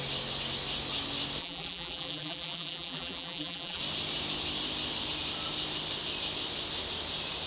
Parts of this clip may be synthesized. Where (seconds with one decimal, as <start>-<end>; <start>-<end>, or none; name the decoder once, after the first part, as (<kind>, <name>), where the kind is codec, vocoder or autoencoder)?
1.4-3.8 (vocoder, BigVGAN v2)